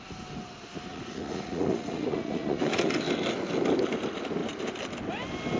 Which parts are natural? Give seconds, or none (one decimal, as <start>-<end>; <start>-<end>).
0.0-0.9; 2.9-5.6